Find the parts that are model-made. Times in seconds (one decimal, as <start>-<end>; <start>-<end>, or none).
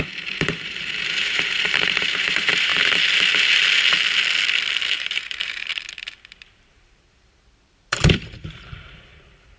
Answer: 0.0-2.7; 4.8-5.7; 6.4-9.6